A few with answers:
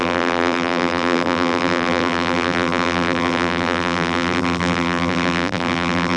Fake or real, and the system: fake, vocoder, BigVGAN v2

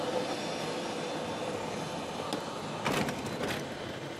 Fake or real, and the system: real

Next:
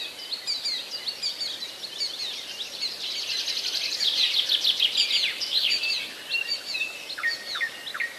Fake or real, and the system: real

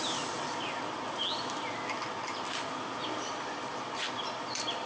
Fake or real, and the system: real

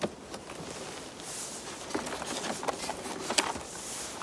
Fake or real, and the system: real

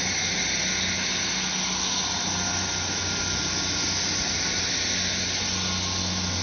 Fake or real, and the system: real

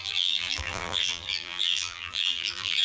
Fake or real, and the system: fake, vocoder, BigVGAN v2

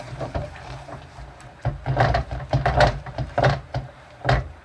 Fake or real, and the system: fake, vocoder, BigVGAN v2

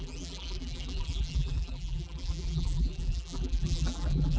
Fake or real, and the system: fake, vocoder, BigVGAN v2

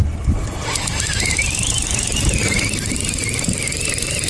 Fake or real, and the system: fake, vocoder, BigVGAN v2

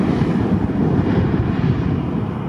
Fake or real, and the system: real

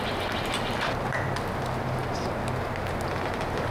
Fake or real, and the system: real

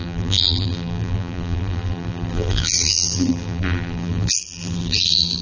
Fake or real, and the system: fake, vocoder, BigVGAN v2